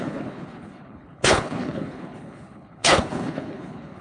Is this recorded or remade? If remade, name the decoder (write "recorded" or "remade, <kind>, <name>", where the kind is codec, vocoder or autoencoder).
remade, codec, HILCodec